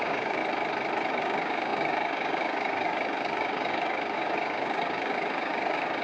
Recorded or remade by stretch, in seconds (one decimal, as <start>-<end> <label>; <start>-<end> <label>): 0.0-0.4 remade; 0.4-1.1 recorded; 1.1-6.0 remade